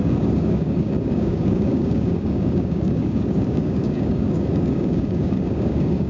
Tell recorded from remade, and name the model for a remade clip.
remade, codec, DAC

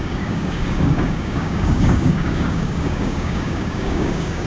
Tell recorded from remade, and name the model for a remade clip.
remade, codec, DAC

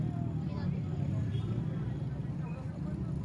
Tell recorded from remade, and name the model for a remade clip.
recorded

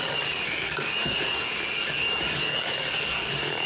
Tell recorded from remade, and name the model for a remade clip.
remade, codec, DAC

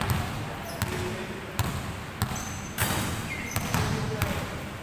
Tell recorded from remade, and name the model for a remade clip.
recorded